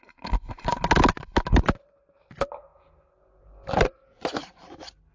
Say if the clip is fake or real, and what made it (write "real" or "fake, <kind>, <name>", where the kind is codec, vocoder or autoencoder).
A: real